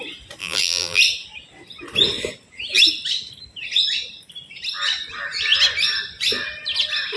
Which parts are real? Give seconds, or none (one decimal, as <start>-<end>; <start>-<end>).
0.0-0.4; 1.0-7.2